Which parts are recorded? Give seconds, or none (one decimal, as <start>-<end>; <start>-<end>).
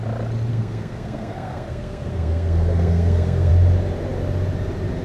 0.0-0.5; 3.5-5.0